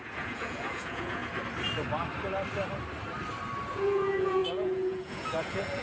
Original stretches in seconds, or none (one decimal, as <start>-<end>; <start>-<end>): 1.2-3.7